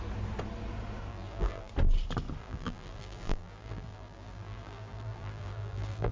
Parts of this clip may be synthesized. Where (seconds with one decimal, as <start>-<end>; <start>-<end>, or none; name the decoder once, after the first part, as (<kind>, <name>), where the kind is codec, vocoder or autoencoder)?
1.1-1.7 (vocoder, BigVGAN v2); 2.4-6.1